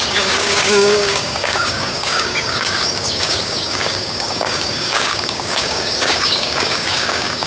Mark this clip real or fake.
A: fake